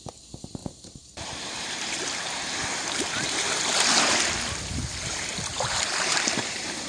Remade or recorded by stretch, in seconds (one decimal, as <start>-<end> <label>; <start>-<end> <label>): 0.0-0.6 recorded; 0.6-2.0 remade; 2.0-5.5 recorded; 5.5-6.9 remade